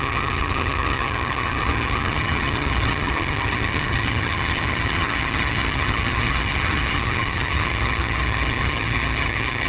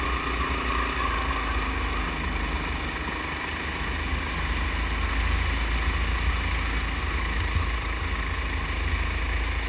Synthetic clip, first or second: first